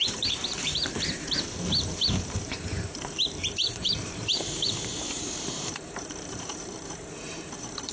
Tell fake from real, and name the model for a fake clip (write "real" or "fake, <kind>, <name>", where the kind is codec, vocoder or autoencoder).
fake, vocoder, BigVGAN v2